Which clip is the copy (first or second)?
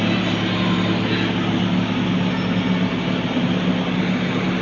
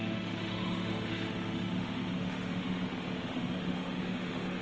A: second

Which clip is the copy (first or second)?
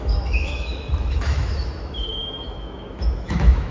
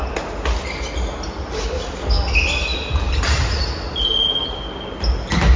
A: first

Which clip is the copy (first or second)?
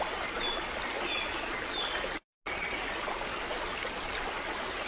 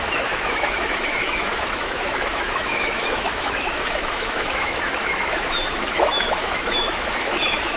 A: second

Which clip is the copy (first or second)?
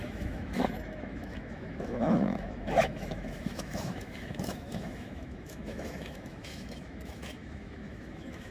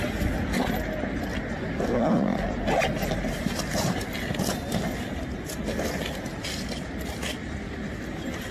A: first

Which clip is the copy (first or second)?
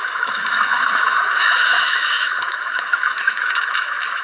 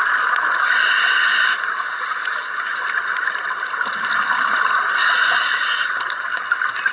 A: first